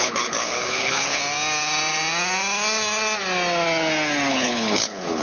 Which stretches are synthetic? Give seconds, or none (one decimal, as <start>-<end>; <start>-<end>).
0.0-1.2; 4.3-5.2